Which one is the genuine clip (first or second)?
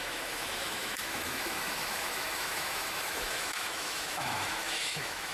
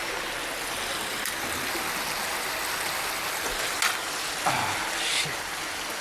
second